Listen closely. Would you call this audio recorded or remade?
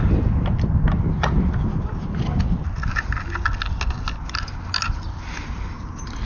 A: recorded